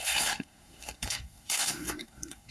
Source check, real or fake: fake